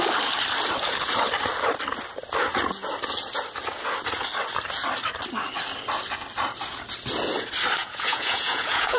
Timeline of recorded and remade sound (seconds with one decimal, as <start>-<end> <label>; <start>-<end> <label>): 0.0-7.8 recorded; 7.8-9.0 remade